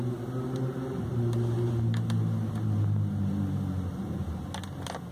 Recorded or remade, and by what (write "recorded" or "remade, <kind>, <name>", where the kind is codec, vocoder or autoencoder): recorded